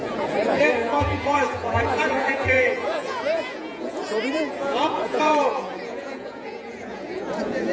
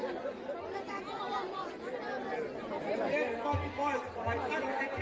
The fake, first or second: first